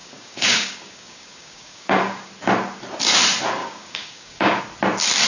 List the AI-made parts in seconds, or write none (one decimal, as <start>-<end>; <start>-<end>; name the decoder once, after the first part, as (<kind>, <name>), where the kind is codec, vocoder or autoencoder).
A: 0.0-2.3 (codec, DAC); 3.6-4.6